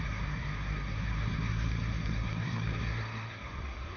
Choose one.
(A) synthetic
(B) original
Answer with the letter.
A